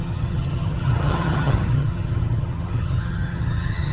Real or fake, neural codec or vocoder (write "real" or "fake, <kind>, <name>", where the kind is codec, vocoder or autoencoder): fake, vocoder, HiFi-GAN